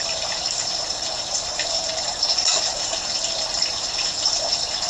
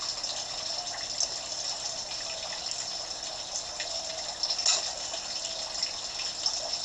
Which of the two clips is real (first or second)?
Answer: second